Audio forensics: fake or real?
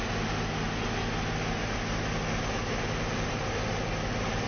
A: real